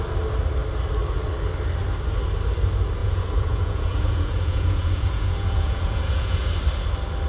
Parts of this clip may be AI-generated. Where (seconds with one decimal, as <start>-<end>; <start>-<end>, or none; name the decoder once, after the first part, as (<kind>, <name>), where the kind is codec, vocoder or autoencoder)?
3.0-6.5 (vocoder, Vocos)